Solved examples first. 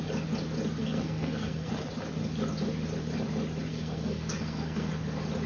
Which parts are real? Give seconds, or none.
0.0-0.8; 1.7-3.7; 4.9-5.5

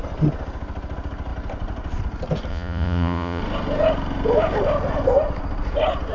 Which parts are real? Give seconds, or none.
0.0-2.5; 3.4-6.1

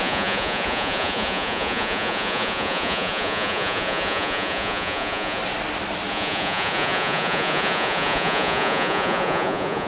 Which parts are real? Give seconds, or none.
5.4-6.1

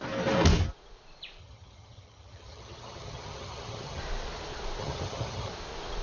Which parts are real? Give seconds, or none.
0.0-1.4; 4.0-4.8; 5.5-6.0

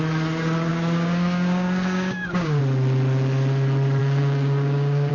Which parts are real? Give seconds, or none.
0.0-0.7; 2.6-4.0

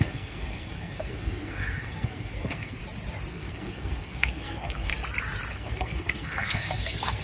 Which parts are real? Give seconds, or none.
2.8-3.3; 4.9-5.5

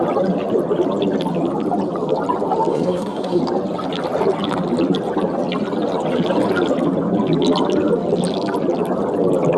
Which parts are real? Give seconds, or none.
0.0-2.7; 3.4-9.6